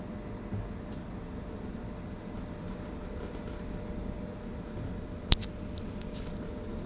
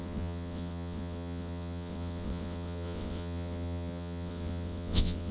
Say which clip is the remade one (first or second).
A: second